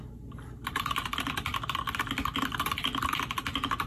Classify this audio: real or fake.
real